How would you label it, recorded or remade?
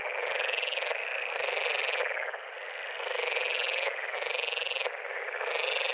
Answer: recorded